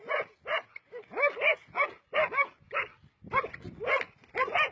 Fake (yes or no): no